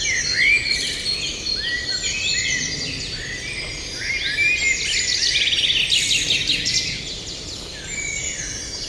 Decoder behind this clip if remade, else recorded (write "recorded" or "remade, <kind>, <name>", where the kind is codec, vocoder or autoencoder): recorded